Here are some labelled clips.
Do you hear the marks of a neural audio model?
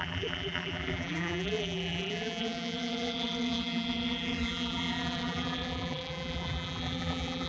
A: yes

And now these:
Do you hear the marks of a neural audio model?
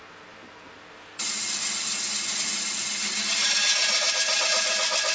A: no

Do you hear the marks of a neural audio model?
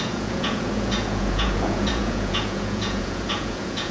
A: yes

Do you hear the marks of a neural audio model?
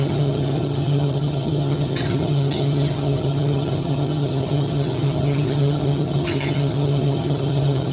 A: yes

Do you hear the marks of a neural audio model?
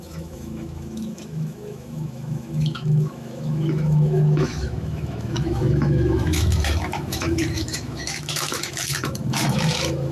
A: yes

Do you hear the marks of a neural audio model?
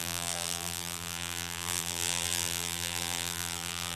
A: yes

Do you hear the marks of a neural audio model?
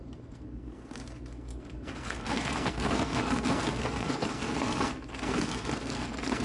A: yes